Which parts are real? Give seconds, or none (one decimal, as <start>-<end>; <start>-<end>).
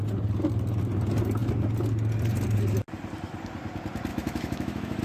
0.0-4.1